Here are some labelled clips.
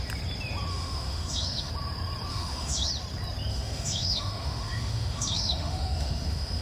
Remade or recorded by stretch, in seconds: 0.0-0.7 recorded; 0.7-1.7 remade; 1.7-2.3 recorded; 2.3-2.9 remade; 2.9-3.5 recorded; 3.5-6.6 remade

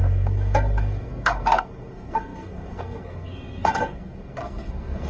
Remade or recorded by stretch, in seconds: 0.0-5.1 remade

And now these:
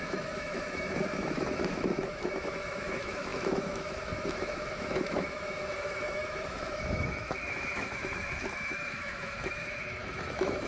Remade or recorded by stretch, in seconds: 0.0-10.7 remade

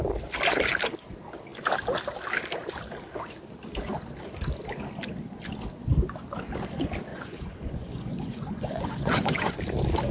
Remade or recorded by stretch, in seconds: 0.0-7.1 recorded; 7.1-9.5 remade; 9.5-10.1 recorded

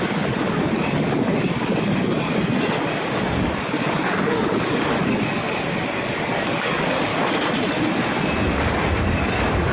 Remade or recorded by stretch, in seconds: 0.0-2.3 remade; 2.3-3.0 recorded; 3.0-7.1 remade; 7.1-9.2 recorded; 9.2-9.7 remade

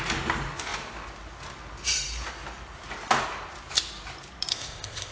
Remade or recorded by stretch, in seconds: 0.0-4.5 recorded; 4.5-5.1 remade